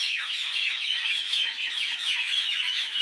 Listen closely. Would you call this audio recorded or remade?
remade